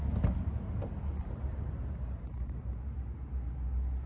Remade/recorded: recorded